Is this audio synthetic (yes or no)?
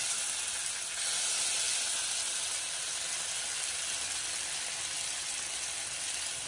no